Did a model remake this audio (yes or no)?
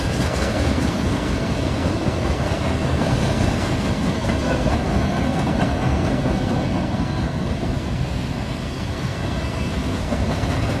yes